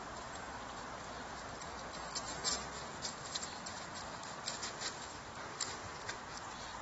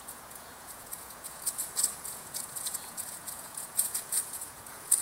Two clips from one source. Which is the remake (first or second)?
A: second